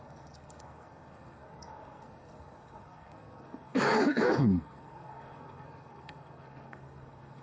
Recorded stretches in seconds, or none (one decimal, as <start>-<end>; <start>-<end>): none